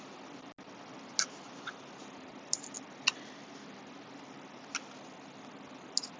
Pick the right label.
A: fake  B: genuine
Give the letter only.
B